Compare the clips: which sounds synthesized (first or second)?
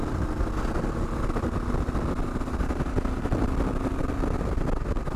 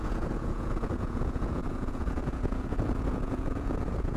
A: second